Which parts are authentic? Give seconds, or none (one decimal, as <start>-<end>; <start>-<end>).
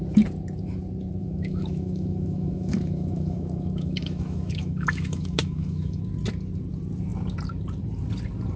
0.0-1.2; 6.0-8.6